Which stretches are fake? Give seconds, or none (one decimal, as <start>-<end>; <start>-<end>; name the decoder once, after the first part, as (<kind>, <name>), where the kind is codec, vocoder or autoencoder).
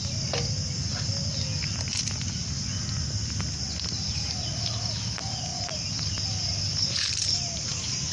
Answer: none